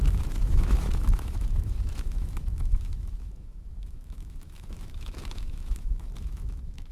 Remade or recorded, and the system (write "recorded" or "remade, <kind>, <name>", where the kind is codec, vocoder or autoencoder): remade, autoencoder, DAC-VAE